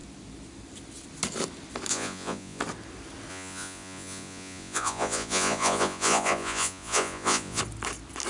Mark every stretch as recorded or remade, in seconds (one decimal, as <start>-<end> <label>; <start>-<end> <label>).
0.0-1.9 recorded; 1.9-2.6 remade; 2.6-3.3 recorded; 3.3-7.6 remade; 7.6-8.3 recorded